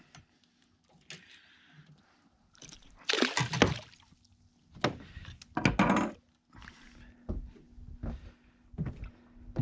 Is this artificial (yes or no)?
no